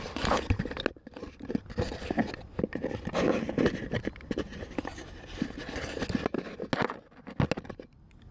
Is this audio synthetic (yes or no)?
no